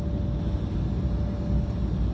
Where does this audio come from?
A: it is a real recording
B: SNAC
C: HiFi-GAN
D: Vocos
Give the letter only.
A